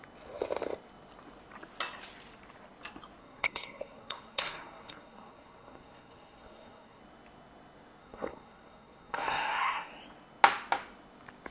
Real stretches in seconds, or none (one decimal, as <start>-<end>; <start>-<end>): 0.0-3.2; 7.0-8.0; 9.9-11.5